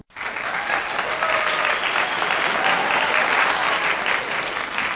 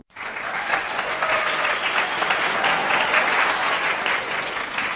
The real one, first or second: first